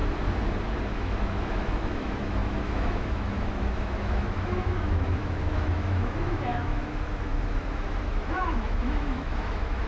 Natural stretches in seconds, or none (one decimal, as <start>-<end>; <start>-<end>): 0.0-0.9